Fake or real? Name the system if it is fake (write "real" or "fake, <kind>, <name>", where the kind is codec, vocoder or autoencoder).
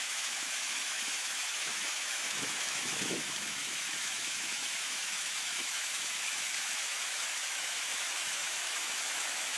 fake, autoencoder, DAC-VAE